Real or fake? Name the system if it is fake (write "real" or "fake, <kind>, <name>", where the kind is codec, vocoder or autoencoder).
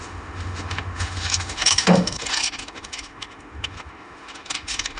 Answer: fake, autoencoder, DAC-VAE